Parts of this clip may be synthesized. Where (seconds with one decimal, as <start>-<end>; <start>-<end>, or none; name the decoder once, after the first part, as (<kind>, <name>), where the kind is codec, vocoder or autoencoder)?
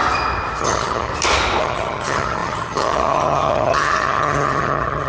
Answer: 0.6-1.1 (vocoder, HiFi-GAN); 1.6-5.1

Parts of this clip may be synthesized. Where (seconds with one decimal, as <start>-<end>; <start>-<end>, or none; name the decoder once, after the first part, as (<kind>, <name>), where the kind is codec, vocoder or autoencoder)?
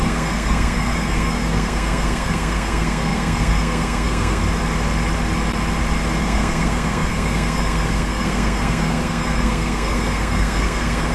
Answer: 0.0-4.4 (codec, SNAC); 6.2-11.1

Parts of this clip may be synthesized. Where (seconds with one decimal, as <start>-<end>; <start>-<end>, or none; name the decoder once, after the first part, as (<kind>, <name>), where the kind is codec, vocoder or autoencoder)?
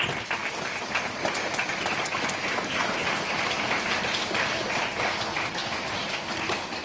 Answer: none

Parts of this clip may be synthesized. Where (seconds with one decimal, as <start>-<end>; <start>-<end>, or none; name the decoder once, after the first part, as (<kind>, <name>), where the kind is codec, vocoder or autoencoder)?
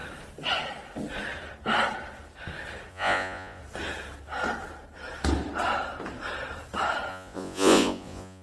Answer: 2.9-3.6 (vocoder, Vocos); 7.1-8.4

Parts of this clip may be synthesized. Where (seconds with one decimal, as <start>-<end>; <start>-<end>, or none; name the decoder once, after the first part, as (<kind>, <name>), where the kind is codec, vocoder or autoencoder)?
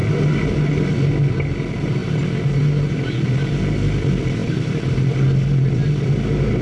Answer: 0.0-0.7 (vocoder, BigVGAN v2); 4.4-6.1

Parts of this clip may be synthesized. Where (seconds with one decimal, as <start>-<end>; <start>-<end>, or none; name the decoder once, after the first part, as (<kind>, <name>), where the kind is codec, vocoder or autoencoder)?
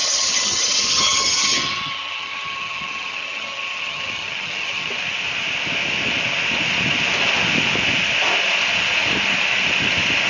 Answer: 0.0-4.9 (vocoder, HiFi-GAN)